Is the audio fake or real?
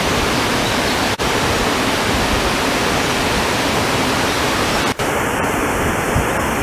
fake